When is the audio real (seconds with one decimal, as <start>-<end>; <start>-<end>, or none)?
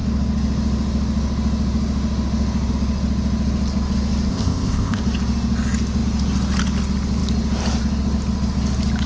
0.0-4.3; 5.0-9.1